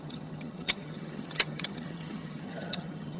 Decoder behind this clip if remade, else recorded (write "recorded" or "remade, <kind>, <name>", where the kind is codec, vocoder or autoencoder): remade, vocoder, HiFi-GAN